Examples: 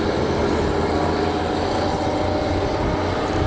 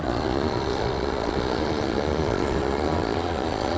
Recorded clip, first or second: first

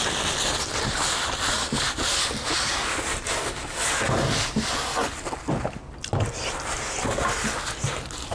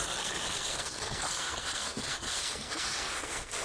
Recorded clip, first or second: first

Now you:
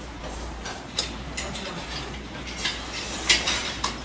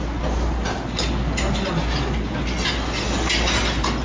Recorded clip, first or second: second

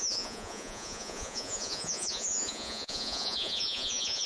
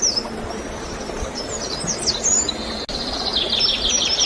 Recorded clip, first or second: second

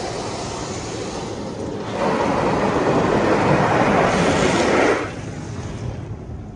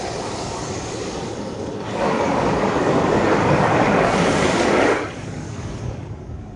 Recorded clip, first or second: first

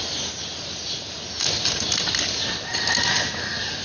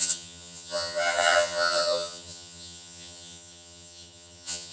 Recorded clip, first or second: first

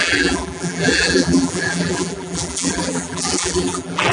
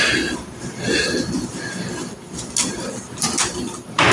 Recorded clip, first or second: second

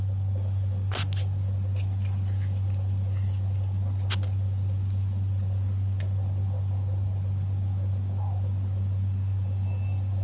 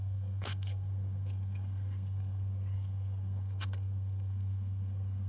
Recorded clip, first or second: first